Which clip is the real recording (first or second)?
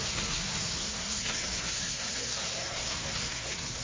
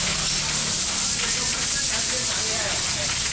second